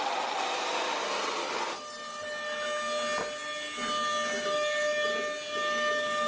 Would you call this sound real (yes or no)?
yes